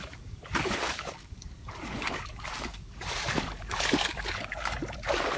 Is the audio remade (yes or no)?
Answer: yes